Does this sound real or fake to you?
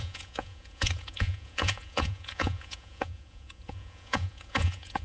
fake